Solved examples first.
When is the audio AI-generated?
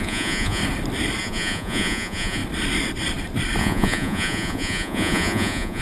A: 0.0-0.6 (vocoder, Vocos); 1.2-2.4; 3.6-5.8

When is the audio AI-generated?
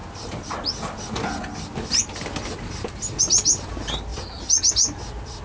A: none